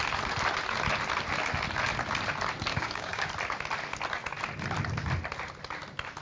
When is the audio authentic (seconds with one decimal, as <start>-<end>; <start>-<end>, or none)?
0.0-2.7; 3.3-6.2